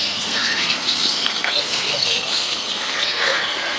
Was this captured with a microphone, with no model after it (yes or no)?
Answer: no